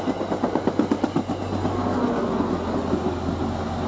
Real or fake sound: real